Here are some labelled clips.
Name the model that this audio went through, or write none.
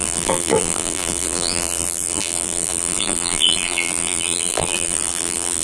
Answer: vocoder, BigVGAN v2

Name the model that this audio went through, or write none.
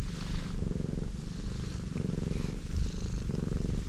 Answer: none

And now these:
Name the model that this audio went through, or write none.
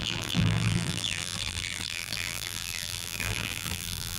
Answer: vocoder, BigVGAN v2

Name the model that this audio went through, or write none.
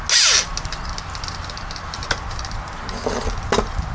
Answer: none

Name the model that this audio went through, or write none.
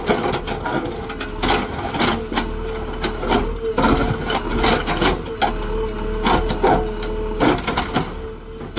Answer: none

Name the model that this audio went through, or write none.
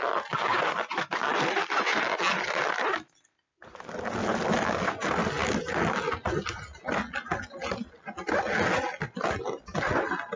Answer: none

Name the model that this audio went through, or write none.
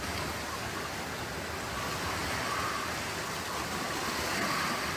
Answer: none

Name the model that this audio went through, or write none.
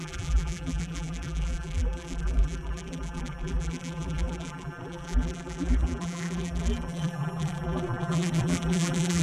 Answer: vocoder, BigVGAN v2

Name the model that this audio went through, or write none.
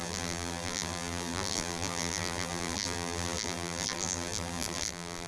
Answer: vocoder, BigVGAN v2